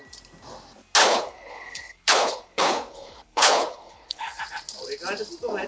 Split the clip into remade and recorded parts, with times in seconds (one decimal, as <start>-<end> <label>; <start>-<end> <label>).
0.0-1.0 recorded; 1.0-4.4 remade; 4.4-5.7 recorded